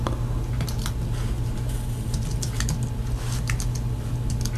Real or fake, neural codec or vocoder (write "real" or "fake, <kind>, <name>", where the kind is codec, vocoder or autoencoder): real